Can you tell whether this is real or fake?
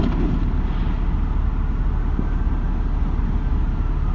real